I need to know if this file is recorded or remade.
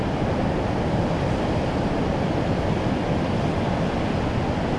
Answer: recorded